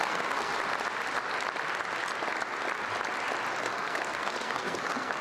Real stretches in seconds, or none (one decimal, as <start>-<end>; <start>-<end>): 0.5-3.6